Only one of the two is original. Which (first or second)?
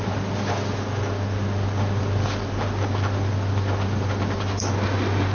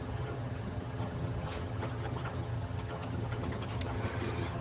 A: first